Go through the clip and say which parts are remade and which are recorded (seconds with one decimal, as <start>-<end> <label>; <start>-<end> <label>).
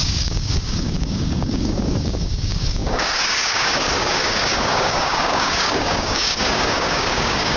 0.0-7.6 remade